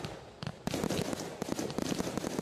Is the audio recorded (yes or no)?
yes